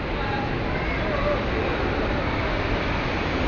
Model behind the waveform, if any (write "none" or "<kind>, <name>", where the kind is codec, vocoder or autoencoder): none